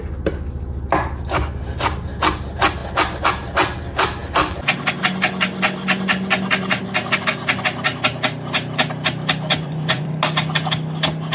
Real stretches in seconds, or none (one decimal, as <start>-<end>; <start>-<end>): 0.0-9.5; 10.1-11.3